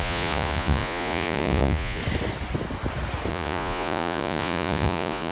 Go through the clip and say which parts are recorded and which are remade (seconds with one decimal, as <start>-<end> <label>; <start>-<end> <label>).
0.0-2.0 remade; 2.0-3.3 recorded; 3.3-5.3 remade